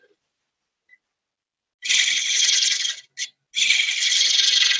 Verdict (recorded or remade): recorded